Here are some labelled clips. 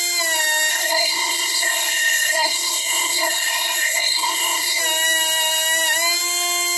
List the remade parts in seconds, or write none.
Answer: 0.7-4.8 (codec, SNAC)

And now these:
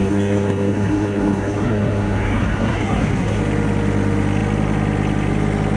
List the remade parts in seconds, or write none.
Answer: 0.0-3.4 (codec, SNAC)

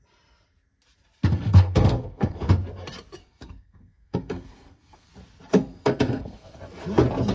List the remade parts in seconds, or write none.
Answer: 1.3-2.5 (codec, SNAC); 3.2-5.1; 5.5-6.6

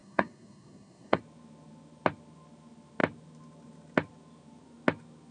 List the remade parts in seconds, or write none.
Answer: 0.0-1.2 (codec, SNAC)

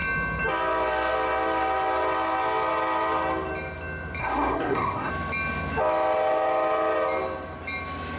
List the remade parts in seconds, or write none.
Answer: 4.2-5.1 (codec, SNAC)

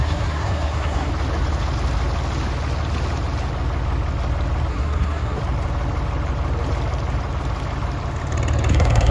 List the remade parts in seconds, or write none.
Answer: 0.0-1.1 (codec, SNAC); 4.7-5.4; 8.7-9.1

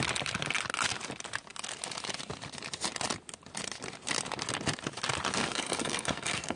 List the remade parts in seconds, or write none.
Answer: 5.4-6.6 (codec, SNAC)

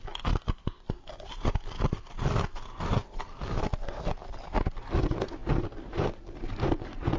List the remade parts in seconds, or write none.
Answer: none